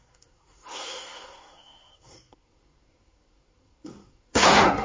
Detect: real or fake fake